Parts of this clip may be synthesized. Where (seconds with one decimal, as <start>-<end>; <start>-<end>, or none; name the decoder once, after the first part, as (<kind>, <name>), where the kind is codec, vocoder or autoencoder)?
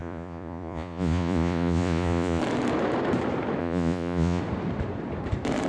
0.0-2.4 (vocoder, Vocos); 3.6-4.4